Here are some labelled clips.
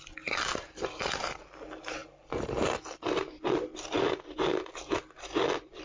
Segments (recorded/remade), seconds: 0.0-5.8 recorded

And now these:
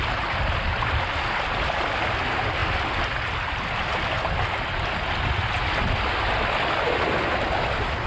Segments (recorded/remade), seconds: 0.0-8.1 recorded

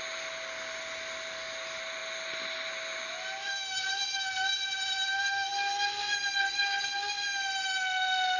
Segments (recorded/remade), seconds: 0.0-8.4 recorded

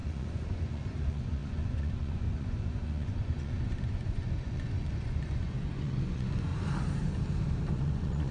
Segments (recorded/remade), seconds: 0.0-6.5 remade; 6.5-7.7 recorded; 7.7-8.3 remade

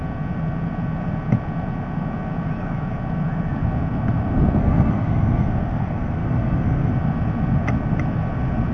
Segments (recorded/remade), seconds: 0.0-4.6 recorded; 4.6-6.9 remade; 6.9-8.7 recorded